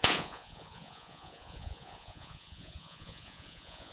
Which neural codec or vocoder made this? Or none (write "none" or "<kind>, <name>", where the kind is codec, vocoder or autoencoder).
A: vocoder, Vocos